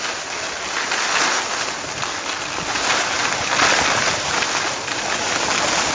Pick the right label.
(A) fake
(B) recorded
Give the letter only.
B